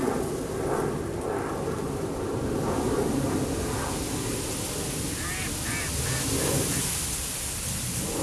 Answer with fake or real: real